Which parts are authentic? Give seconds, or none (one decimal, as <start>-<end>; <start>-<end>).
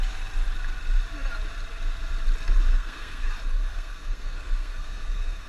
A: 0.0-2.7; 3.3-3.7